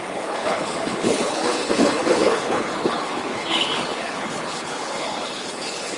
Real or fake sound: fake